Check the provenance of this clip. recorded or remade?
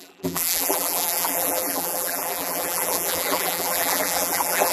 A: remade